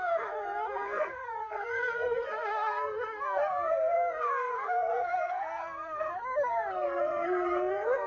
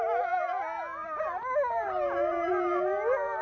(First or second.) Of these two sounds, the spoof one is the first